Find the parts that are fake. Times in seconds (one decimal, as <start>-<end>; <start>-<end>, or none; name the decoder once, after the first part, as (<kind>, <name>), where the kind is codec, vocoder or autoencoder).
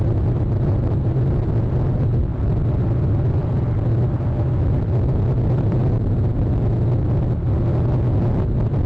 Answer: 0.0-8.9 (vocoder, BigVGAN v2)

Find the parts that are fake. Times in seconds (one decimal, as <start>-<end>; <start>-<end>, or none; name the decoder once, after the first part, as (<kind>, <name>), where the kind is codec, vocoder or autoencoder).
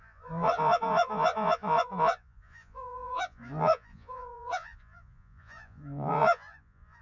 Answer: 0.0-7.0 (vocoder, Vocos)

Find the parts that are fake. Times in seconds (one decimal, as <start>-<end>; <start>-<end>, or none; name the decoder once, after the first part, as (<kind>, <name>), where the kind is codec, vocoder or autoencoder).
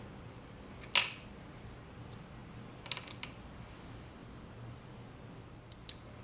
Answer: none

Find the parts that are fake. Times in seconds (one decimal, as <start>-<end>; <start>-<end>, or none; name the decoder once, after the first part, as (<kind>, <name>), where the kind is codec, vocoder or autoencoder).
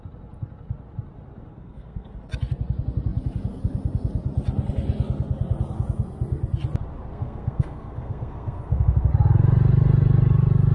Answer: 1.5-2.1 (codec, SNAC); 7.1-9.1